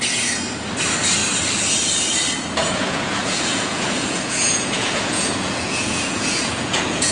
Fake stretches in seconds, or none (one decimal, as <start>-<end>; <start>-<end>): 2.6-7.1